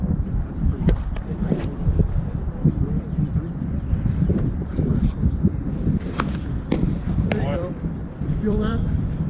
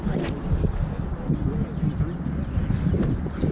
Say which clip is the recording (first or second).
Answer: second